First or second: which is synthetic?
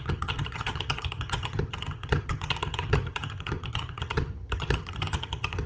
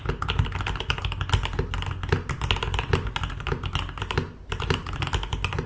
first